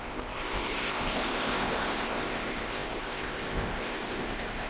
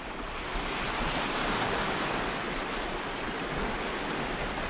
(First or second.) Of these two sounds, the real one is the second